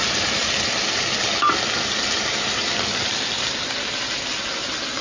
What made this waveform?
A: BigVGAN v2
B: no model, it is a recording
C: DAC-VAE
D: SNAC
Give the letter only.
B